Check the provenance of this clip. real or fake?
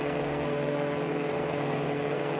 fake